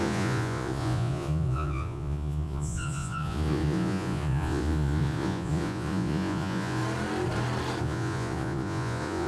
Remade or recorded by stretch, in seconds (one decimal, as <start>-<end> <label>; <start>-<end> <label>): 0.0-6.8 remade; 6.8-7.8 recorded; 7.8-9.3 remade